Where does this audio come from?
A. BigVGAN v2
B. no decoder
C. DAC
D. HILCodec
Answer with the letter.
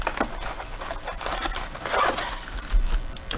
B